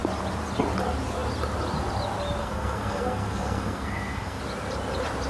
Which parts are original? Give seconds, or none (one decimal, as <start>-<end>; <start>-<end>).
0.0-2.4; 4.4-5.3